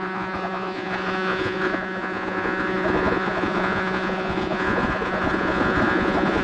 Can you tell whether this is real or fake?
fake